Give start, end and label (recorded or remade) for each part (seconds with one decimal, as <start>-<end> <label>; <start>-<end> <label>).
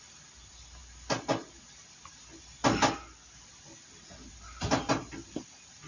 0.0-5.9 recorded